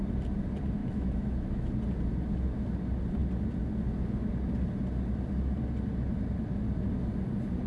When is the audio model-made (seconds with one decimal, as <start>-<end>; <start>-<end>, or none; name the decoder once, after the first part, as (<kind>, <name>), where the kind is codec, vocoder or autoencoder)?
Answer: 0.8-1.7 (autoencoder, DAC-VAE)